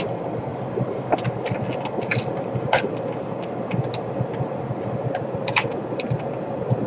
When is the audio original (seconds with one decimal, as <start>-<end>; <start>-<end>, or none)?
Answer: 0.0-6.9